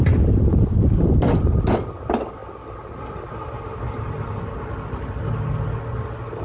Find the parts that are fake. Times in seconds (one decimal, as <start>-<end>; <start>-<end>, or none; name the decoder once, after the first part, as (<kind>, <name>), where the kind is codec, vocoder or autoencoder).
none